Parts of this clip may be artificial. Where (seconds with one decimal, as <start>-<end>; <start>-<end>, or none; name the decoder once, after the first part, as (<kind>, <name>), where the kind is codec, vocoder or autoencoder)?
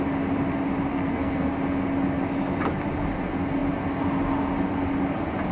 0.9-1.5 (codec, SNAC)